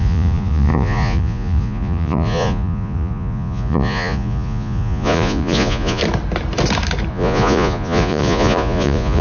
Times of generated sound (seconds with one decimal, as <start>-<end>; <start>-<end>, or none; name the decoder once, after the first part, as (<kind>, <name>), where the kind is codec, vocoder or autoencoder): 0.0-6.0 (vocoder, Vocos); 7.1-9.2